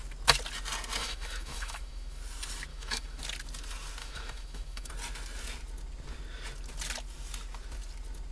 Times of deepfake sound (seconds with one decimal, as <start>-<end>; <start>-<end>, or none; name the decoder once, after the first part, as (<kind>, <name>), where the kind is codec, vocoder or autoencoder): 1.0-2.2 (autoencoder, DAC-VAE); 2.7-3.2; 4.0-4.9